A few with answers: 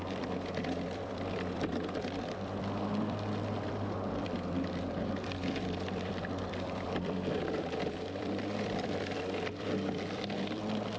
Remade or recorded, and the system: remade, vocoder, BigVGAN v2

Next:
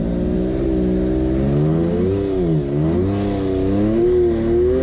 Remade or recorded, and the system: recorded